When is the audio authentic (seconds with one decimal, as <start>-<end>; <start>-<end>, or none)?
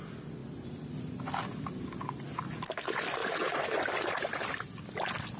0.0-5.4